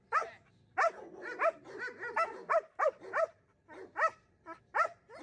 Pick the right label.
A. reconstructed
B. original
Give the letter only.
B